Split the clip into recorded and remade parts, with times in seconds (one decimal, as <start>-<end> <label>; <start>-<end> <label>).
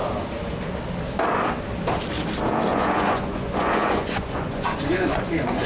0.0-2.7 recorded; 2.7-5.7 remade